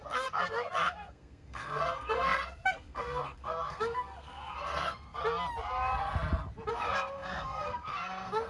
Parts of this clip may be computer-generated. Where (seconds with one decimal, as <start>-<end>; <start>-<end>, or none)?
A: 0.0-5.2; 6.7-8.5